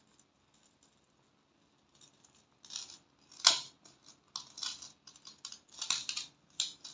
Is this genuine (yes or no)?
yes